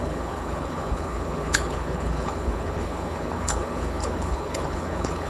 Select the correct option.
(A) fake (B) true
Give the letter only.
A